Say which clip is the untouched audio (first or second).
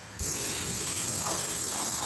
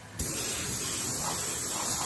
second